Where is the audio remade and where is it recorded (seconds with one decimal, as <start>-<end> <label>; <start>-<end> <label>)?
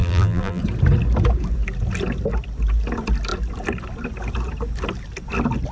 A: 0.0-0.6 remade; 0.6-5.7 recorded